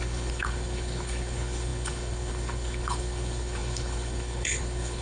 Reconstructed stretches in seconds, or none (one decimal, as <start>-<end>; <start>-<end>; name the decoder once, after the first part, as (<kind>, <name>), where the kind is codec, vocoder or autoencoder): 0.0-5.0 (codec, HILCodec)